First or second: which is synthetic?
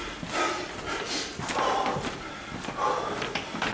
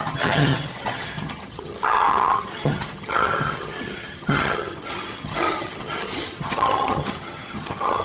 second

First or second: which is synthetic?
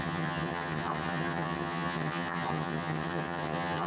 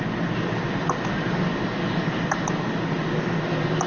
first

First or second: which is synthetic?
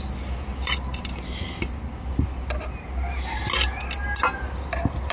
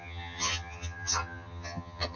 second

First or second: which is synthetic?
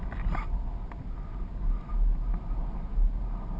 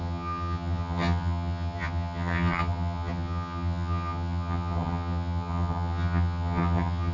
second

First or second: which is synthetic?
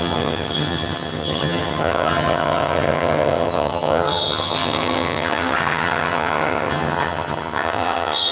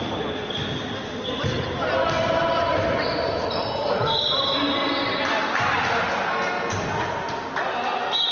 first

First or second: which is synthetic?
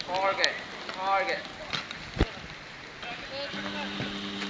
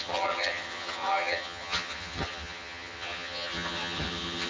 second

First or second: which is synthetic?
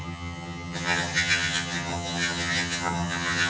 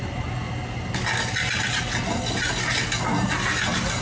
first